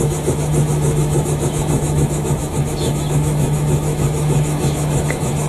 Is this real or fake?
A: fake